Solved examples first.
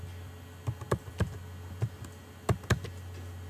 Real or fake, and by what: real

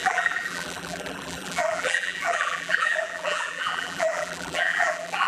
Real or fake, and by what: fake, vocoder, BigVGAN v2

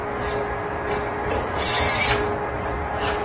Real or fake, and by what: real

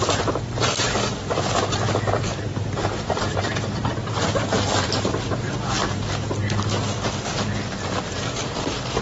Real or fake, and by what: real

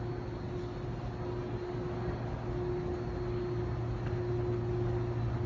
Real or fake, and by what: real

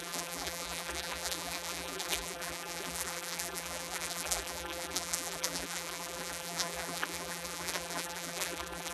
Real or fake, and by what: fake, vocoder, BigVGAN v2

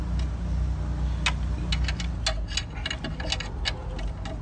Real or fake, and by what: real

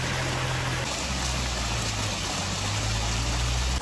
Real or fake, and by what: real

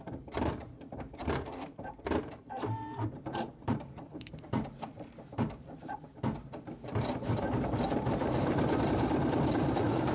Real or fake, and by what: fake, vocoder, BigVGAN v2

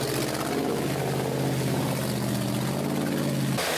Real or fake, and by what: real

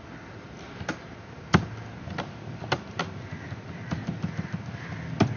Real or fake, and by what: real